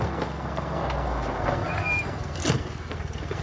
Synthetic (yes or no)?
yes